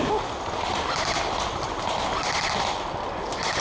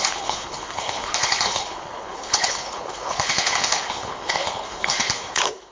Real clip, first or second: first